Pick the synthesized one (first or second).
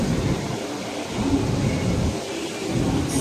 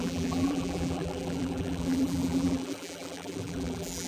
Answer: second